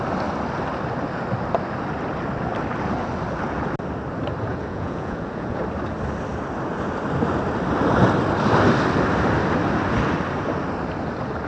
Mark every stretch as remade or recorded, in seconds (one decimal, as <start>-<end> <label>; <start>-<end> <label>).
0.0-4.5 recorded; 4.5-5.6 remade; 5.6-11.5 recorded